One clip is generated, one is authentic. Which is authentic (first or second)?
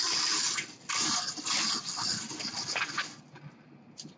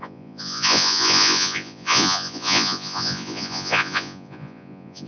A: first